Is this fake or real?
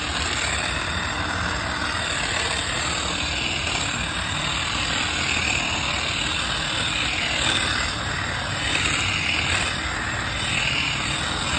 real